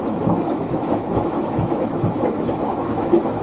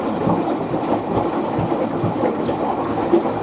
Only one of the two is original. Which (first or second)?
second